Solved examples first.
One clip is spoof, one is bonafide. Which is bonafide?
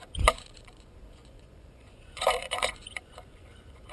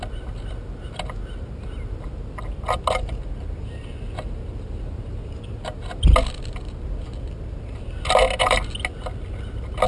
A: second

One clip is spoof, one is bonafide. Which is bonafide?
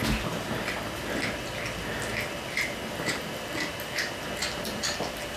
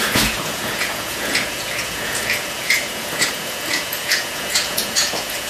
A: first